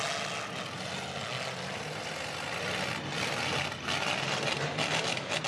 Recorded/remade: recorded